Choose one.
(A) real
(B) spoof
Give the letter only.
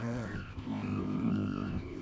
B